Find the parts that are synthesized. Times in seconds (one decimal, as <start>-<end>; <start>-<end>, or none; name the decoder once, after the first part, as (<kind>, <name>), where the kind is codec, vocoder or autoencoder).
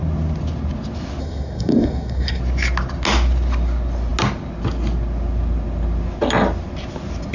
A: 1.2-2.4 (codec, SNAC)